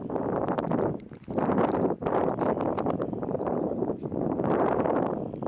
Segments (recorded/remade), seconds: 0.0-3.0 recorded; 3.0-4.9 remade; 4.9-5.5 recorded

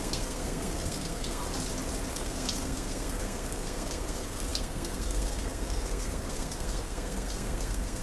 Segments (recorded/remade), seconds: 0.0-1.4 remade; 1.4-2.1 recorded; 2.1-8.0 remade

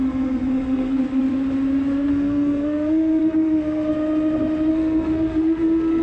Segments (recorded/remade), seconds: 0.0-1.0 remade; 1.0-2.1 recorded; 2.1-3.9 remade; 3.9-4.7 recorded; 4.7-6.0 remade

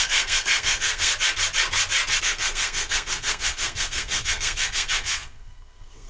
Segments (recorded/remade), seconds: 0.0-1.1 remade; 1.1-2.2 recorded; 2.2-6.1 remade